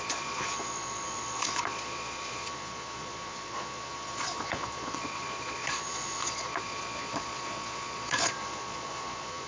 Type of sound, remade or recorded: remade